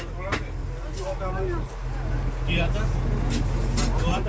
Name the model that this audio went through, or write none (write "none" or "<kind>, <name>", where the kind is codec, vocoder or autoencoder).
none